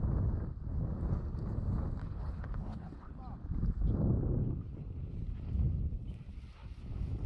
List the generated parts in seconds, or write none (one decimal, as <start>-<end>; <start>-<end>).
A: 2.0-3.2